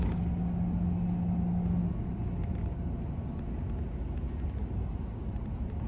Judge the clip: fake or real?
real